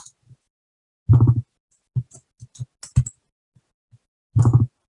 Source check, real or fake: real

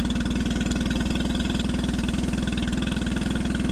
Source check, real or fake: real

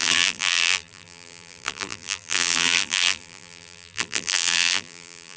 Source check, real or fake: fake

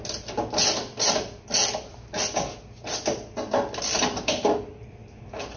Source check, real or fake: real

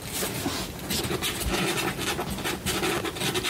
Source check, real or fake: real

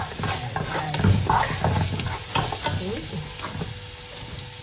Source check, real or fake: real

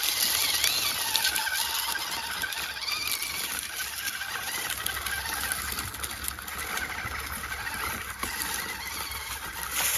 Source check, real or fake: real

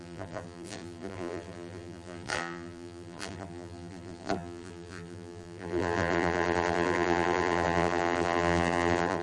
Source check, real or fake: fake